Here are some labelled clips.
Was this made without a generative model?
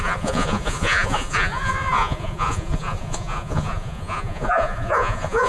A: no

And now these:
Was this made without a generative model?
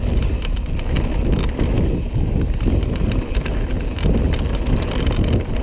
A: yes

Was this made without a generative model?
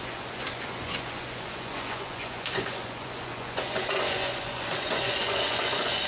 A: no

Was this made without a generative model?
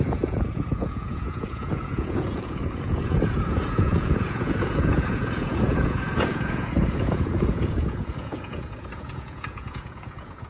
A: no